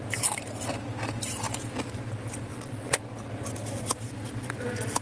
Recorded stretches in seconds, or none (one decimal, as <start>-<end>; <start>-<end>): 0.0-2.5; 3.0-5.0